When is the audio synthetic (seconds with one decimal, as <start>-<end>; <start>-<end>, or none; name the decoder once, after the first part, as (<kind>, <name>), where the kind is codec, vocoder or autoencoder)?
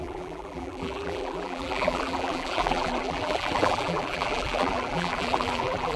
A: 0.0-6.0 (vocoder, BigVGAN v2)